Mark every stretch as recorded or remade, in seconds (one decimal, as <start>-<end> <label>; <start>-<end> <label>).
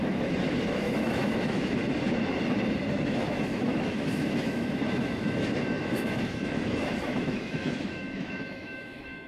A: 0.0-1.8 remade; 1.8-2.9 recorded; 2.9-9.3 remade